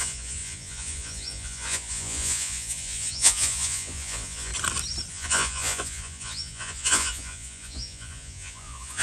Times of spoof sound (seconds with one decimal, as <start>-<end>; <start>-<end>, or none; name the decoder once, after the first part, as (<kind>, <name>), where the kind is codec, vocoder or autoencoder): 0.0-4.5 (vocoder, Vocos); 5.1-9.0